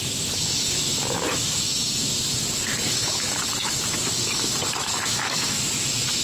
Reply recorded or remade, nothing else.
remade